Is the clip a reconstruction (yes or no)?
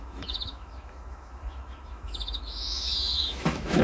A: yes